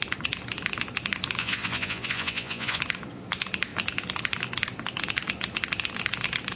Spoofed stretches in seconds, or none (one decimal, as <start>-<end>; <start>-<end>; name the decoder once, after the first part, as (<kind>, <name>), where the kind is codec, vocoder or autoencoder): 1.4-2.8 (vocoder, Vocos)